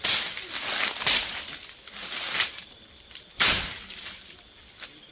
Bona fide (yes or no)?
no